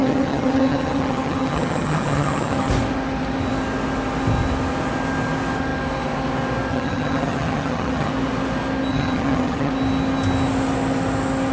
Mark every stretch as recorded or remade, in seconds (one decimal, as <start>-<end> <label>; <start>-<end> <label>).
0.0-2.7 remade; 2.7-6.7 recorded; 6.7-8.1 remade; 8.1-8.9 recorded; 8.9-9.7 remade; 9.7-11.5 recorded